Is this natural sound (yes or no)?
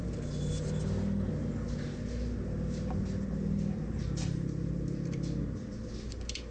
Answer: yes